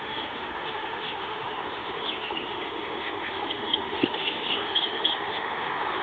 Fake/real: fake